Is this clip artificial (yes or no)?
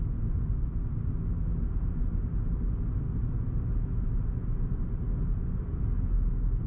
no